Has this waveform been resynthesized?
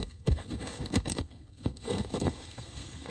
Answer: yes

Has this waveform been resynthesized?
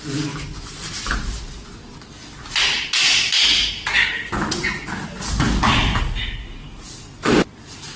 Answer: no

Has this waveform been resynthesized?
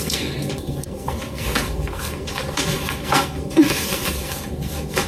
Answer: yes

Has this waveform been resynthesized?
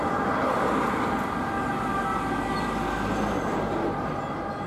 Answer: no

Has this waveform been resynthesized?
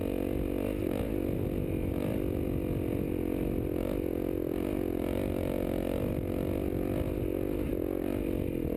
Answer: no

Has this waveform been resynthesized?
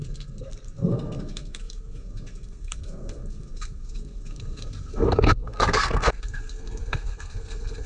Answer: yes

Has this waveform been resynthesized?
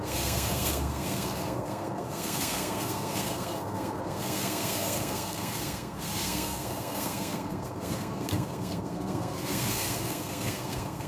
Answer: yes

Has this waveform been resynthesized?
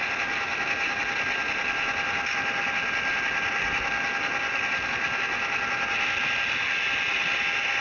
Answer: no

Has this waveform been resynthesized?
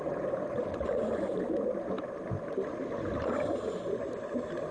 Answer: no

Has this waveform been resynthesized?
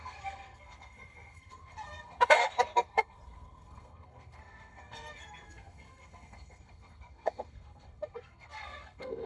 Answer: yes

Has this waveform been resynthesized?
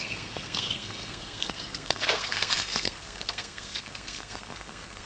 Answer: yes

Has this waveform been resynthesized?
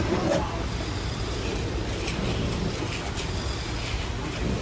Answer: no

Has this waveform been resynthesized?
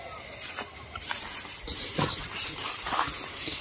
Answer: no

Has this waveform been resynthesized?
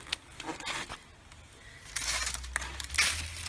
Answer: no